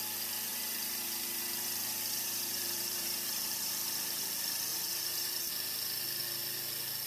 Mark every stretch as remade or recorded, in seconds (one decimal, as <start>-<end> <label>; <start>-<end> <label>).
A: 0.0-0.5 recorded; 0.5-3.7 remade; 3.7-4.7 recorded; 4.7-5.5 remade; 5.5-7.1 recorded